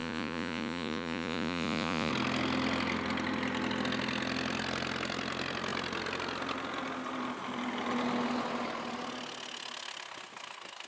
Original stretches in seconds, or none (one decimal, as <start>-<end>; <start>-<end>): 2.1-10.9